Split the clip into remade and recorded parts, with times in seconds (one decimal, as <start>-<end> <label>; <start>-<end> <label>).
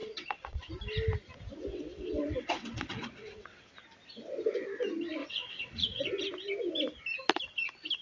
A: 0.0-0.7 remade; 0.7-1.7 recorded; 1.7-3.7 remade; 3.7-5.2 recorded; 5.2-6.0 remade; 6.0-8.0 recorded